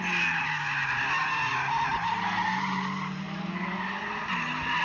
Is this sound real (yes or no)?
yes